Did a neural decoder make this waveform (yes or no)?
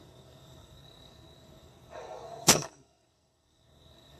yes